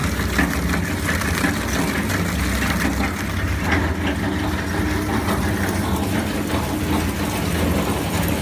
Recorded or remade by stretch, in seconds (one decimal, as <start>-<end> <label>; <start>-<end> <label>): 0.0-8.4 recorded